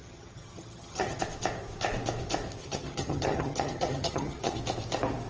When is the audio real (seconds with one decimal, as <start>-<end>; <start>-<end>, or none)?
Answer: 1.2-2.6; 4.6-5.3